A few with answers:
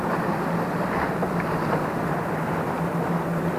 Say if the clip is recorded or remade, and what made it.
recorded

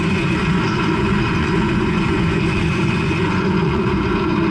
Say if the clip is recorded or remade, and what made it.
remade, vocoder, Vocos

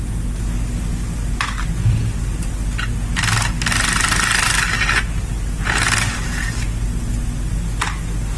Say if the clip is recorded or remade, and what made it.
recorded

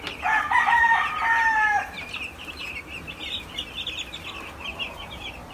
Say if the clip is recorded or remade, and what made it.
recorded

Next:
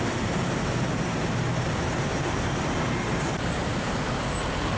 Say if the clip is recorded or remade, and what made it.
remade, vocoder, BigVGAN v2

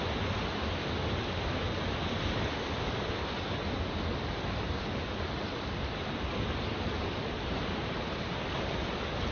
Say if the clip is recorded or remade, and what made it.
recorded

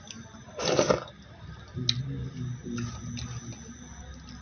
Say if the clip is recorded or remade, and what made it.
recorded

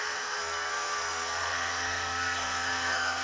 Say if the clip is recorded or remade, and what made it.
remade, codec, SNAC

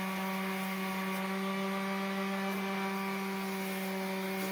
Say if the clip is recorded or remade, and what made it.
recorded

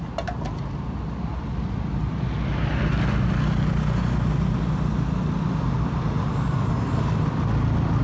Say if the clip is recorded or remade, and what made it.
recorded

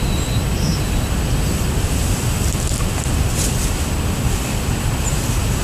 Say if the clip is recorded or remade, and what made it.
recorded